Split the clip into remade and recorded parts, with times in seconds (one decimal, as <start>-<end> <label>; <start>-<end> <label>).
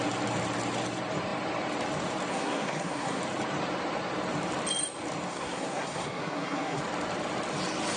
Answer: 0.0-2.3 recorded; 2.3-3.2 remade; 3.2-5.3 recorded; 5.3-6.8 remade; 6.8-8.0 recorded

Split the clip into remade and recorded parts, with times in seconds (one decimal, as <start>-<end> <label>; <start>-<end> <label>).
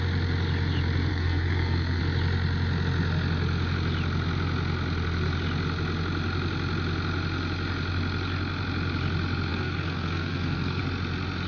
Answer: 0.0-1.1 recorded; 1.1-2.0 remade; 2.0-9.5 recorded; 9.5-10.8 remade; 10.8-11.5 recorded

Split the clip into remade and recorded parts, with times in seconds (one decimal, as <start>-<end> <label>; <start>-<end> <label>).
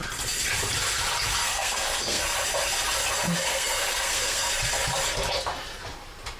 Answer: 0.0-1.4 recorded; 1.4-2.2 remade; 2.2-3.4 recorded; 3.4-4.5 remade; 4.5-6.4 recorded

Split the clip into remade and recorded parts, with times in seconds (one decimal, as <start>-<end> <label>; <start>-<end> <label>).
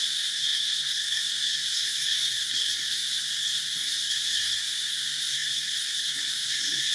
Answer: 0.0-6.9 remade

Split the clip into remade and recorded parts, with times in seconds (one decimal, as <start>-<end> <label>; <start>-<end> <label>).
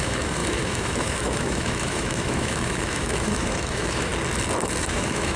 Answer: 0.0-4.1 remade; 4.1-4.8 recorded; 4.8-5.4 remade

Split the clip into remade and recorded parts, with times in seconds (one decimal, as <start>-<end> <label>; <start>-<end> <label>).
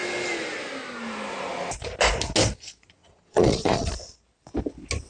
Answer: 0.0-3.0 recorded; 3.0-3.9 remade; 3.9-5.1 recorded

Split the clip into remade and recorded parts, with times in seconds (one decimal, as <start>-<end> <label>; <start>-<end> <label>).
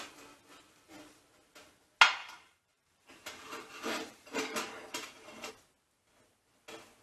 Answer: 0.0-2.2 recorded; 2.2-5.5 remade; 5.5-7.0 recorded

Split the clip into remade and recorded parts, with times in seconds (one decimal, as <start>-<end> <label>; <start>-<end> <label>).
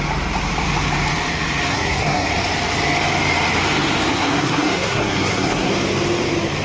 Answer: 0.0-1.7 recorded; 1.7-2.3 remade; 2.3-4.1 recorded; 4.1-5.7 remade; 5.7-6.6 recorded